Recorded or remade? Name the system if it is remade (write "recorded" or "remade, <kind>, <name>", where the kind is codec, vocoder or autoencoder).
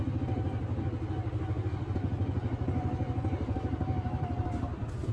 recorded